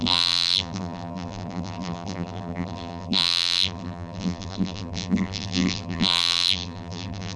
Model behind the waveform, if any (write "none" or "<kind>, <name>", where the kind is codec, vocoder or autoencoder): vocoder, BigVGAN v2